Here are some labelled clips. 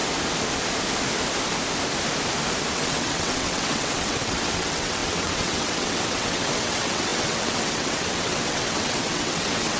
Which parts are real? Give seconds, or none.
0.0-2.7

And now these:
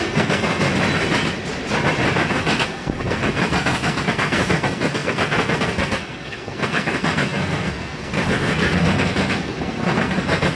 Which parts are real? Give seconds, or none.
0.7-2.3

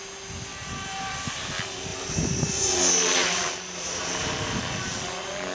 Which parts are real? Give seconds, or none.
0.0-0.5; 1.5-1.9; 2.8-3.2; 4.6-5.5

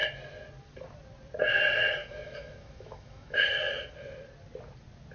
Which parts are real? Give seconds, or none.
0.0-2.0; 3.5-5.1